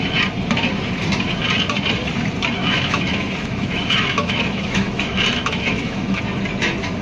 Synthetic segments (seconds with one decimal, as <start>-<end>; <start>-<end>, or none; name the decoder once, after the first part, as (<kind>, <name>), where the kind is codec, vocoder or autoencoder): 2.6-6.2 (autoencoder, DAC-VAE)